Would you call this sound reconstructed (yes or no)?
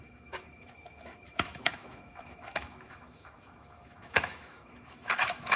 yes